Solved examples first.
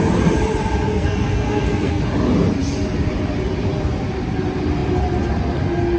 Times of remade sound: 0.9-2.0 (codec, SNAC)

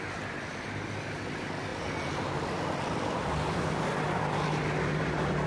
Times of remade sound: none

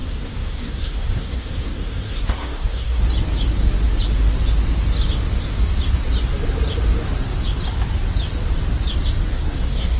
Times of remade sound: 0.0-3.0 (codec, SNAC); 9.3-10.0

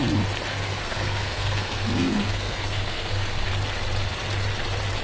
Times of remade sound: 0.5-3.5 (codec, SNAC)